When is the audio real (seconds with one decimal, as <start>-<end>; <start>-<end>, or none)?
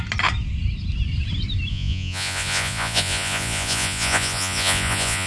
0.0-1.7